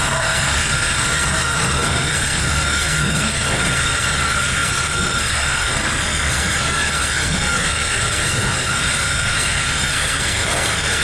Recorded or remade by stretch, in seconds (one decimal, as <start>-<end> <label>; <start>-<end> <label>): 0.0-11.0 remade